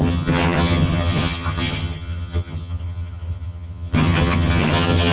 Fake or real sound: fake